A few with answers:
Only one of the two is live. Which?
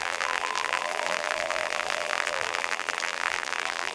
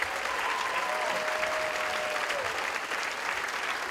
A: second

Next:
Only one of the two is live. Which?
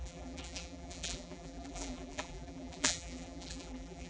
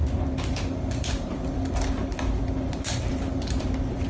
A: second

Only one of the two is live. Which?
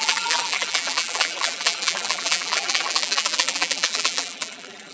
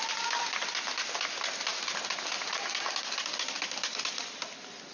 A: second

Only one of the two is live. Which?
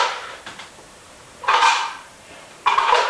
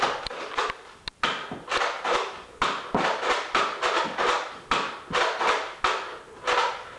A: second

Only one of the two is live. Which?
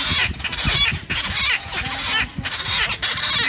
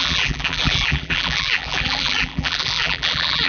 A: first